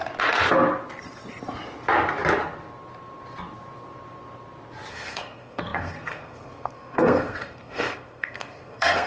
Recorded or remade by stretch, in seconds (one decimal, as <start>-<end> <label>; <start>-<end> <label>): 0.0-4.9 recorded; 4.9-9.1 remade